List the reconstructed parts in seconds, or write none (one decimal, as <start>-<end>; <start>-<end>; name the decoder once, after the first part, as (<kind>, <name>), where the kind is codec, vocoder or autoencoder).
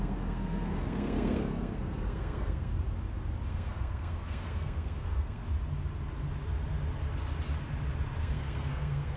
0.0-2.7 (codec, SNAC); 3.5-5.4; 8.2-9.2